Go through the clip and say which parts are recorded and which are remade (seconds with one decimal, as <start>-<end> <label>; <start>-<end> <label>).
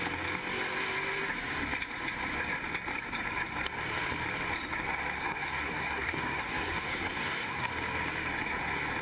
0.0-5.2 recorded; 5.2-7.7 remade; 7.7-9.0 recorded